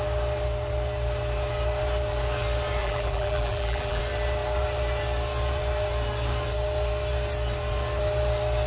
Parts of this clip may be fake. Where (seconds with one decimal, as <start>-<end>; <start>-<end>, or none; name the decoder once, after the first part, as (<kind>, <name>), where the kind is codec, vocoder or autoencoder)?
2.8-4.0 (vocoder, BigVGAN v2)